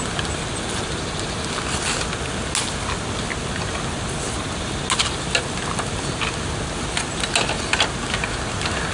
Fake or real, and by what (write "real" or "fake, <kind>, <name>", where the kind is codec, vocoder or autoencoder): real